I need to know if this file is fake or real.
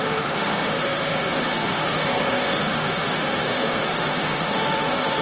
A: fake